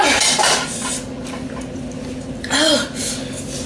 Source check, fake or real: real